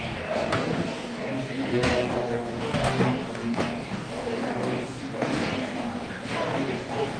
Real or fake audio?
fake